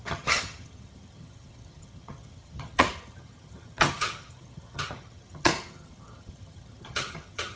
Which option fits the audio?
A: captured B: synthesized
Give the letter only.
B